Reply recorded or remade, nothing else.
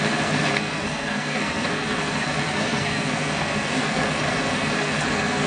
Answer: remade